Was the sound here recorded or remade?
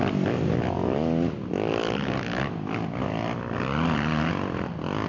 recorded